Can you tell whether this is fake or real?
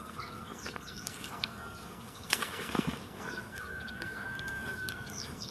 fake